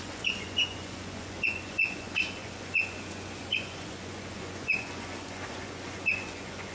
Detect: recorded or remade remade